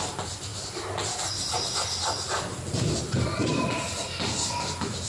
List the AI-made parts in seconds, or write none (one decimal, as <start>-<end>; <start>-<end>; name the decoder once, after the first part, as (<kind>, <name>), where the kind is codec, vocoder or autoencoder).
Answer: none